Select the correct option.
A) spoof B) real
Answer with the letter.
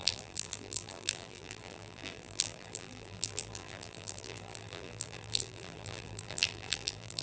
A